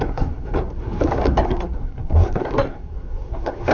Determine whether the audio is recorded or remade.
remade